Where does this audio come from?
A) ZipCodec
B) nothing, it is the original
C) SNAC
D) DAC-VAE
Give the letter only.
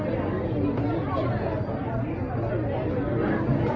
B